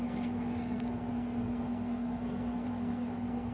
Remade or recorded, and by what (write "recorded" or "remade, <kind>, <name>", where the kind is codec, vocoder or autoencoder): remade, codec, SNAC